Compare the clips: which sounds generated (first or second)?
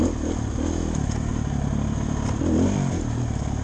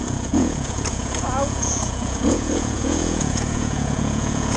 second